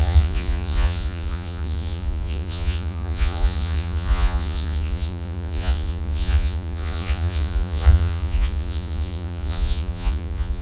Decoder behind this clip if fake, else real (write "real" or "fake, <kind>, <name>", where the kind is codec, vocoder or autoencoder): fake, vocoder, Vocos